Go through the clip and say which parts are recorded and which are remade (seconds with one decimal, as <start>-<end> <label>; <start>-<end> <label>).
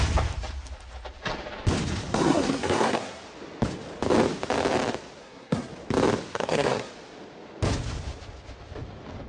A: 0.0-2.1 recorded; 2.1-3.2 remade; 3.2-5.2 recorded; 5.2-5.7 remade; 5.7-6.3 recorded; 6.3-6.9 remade; 6.9-9.3 recorded